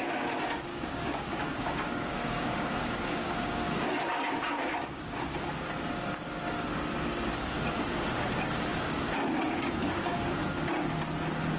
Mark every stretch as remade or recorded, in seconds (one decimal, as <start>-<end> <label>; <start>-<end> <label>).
0.0-0.7 recorded; 0.7-5.5 remade; 5.5-9.8 recorded; 9.8-10.4 remade; 10.4-11.6 recorded